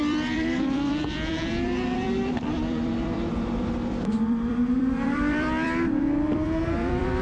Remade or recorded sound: remade